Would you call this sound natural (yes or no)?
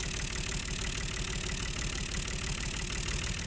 yes